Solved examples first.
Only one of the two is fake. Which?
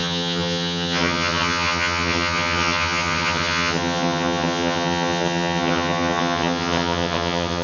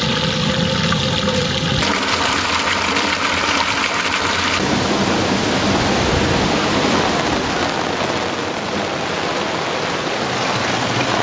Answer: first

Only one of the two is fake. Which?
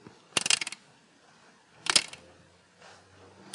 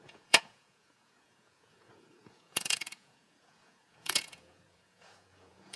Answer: second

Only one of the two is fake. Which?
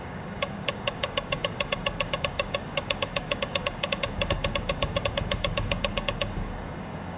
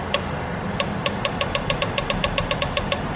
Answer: first